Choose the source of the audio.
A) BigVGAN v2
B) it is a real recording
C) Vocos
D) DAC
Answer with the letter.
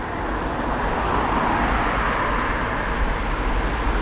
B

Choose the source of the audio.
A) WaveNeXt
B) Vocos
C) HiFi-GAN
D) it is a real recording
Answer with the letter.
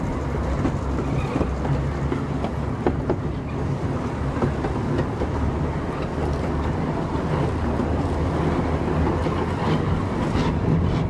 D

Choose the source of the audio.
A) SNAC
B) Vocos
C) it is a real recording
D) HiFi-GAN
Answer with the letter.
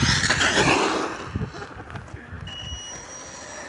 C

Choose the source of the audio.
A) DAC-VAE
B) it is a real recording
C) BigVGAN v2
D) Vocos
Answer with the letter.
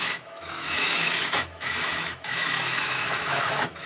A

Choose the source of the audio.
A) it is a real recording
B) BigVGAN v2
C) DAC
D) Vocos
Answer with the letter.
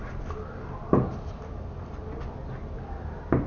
A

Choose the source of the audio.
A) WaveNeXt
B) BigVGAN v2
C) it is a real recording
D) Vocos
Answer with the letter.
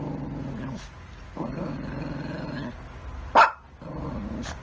C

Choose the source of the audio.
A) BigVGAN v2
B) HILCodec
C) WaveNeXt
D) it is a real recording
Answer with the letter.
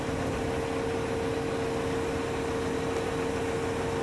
D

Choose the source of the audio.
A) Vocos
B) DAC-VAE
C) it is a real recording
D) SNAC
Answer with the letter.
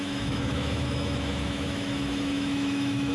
B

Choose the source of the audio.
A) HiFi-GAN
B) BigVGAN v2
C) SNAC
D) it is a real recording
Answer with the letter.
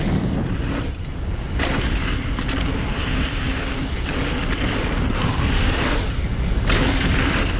D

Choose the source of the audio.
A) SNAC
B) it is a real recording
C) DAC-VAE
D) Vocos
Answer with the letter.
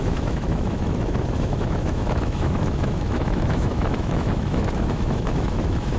C